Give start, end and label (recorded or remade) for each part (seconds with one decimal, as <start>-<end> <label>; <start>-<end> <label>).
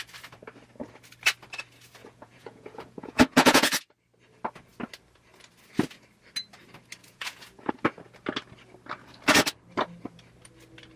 0.0-2.0 recorded; 2.0-3.9 remade; 3.9-7.0 recorded; 7.0-7.7 remade; 7.7-11.0 recorded